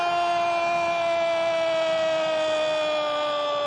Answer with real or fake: real